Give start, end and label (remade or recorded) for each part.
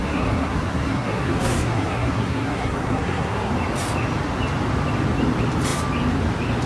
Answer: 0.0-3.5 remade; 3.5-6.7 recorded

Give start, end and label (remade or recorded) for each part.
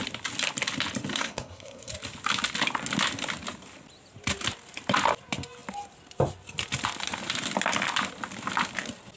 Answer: 0.0-1.1 recorded; 1.1-1.9 remade; 1.9-9.2 recorded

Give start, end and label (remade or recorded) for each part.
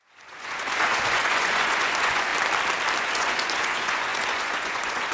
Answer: 0.0-2.3 remade; 2.3-3.0 recorded; 3.0-5.1 remade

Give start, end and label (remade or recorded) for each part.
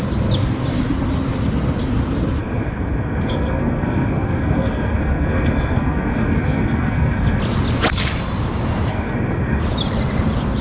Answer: 0.0-2.4 recorded; 2.4-7.4 remade; 7.4-8.9 recorded; 8.9-9.6 remade; 9.6-10.6 recorded